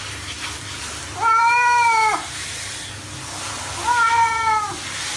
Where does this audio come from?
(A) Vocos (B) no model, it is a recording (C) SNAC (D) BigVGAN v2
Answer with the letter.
B